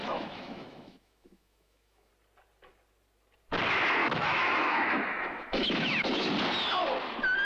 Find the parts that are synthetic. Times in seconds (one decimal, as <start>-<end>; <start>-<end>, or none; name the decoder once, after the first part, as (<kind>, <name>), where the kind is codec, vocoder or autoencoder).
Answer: 0.0-2.1 (autoencoder, DAC-VAE); 4.0-6.3